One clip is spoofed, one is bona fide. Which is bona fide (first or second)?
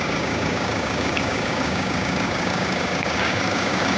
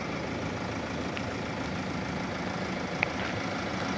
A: second